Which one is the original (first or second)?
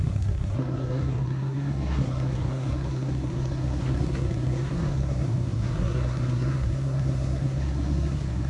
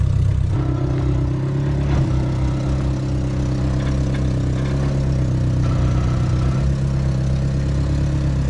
second